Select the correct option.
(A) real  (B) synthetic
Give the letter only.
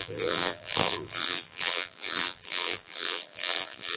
B